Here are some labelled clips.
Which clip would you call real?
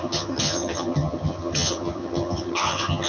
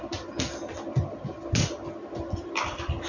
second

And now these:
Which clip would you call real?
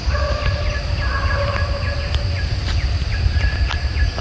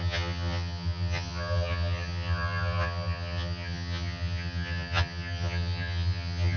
first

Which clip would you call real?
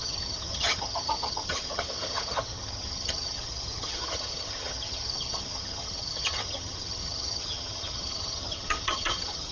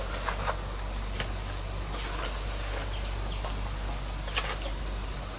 second